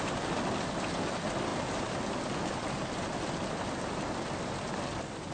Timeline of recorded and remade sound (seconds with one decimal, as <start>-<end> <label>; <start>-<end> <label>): 0.0-1.5 recorded; 1.5-4.7 remade; 4.7-5.3 recorded